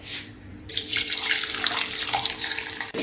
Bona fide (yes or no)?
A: no